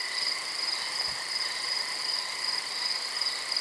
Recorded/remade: remade